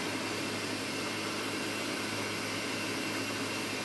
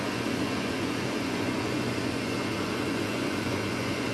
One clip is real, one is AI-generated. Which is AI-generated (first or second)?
second